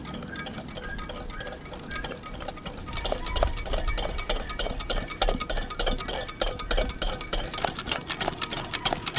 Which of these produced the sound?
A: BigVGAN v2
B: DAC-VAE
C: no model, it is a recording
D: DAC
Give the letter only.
C